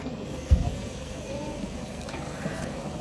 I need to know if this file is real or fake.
fake